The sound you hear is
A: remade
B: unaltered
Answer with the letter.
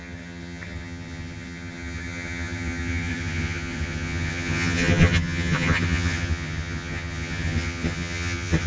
A